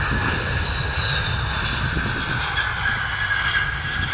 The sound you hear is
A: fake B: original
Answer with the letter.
B